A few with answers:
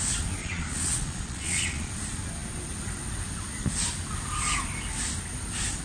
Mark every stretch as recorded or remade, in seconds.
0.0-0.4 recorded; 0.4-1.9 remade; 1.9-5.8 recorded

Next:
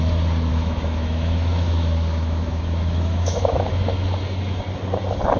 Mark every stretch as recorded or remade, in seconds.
0.0-0.5 recorded; 0.5-3.7 remade; 3.7-5.4 recorded

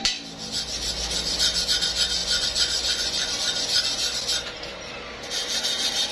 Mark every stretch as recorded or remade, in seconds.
0.0-2.2 recorded; 2.2-3.3 remade; 3.3-6.1 recorded

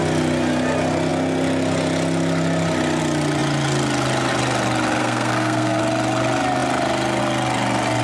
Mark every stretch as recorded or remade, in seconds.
0.0-5.0 recorded; 5.0-5.8 remade; 5.8-8.0 recorded

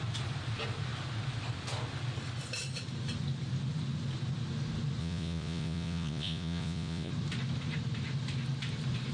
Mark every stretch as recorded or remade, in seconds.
0.0-5.0 recorded; 5.0-7.1 remade; 7.1-9.1 recorded